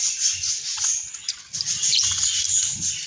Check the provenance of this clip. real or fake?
fake